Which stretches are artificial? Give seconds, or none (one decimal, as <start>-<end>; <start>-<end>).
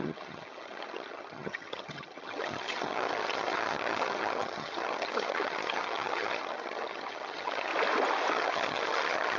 0.0-7.7; 8.3-9.4